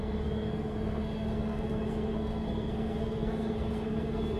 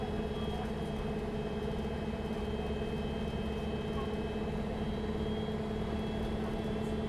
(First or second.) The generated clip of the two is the first